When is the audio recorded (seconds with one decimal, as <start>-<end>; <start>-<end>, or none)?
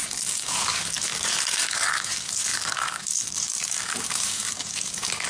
none